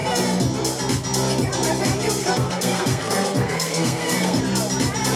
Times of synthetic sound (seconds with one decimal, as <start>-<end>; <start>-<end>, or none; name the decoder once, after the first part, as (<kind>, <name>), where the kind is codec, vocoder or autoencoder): 2.2-4.4 (codec, SNAC)